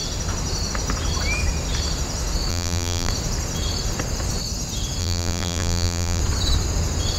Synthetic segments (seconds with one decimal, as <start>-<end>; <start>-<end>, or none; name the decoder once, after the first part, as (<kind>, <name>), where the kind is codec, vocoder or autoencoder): 2.5-3.1 (vocoder, BigVGAN v2); 5.0-6.2